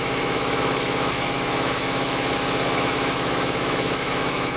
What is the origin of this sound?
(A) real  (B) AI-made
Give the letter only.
B